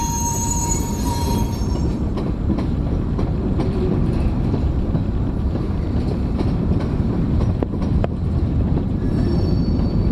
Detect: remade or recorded remade